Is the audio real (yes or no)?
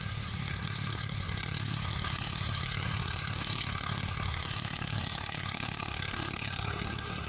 no